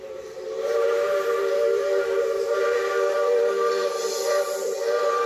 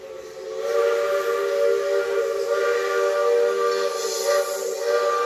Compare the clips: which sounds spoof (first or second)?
first